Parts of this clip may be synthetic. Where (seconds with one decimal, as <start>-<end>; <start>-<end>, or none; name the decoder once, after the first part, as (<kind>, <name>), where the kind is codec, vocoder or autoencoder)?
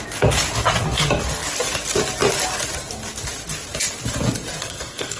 4.6-5.2 (codec, SNAC)